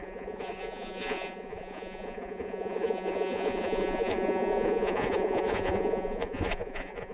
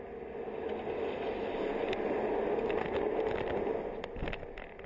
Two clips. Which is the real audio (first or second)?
second